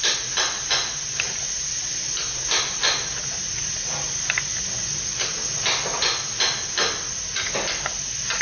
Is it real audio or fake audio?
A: real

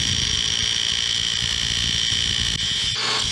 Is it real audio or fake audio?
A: real